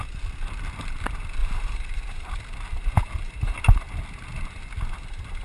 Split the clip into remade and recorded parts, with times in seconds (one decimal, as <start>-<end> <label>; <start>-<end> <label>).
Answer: 0.0-1.4 recorded; 1.4-2.3 remade; 2.3-5.4 recorded

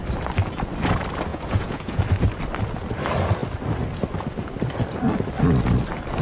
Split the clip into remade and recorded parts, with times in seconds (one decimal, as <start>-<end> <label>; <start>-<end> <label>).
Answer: 0.0-1.3 recorded; 1.3-2.0 remade; 2.0-6.2 recorded

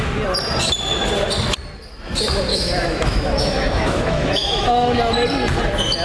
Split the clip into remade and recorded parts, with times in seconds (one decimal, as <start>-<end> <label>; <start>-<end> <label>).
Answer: 0.0-2.5 recorded; 2.5-5.0 remade; 5.0-6.0 recorded